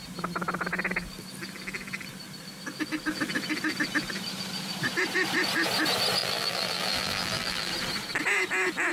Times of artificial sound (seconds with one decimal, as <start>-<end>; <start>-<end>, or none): 6.2-7.7